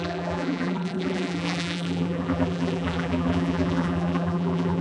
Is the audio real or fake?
fake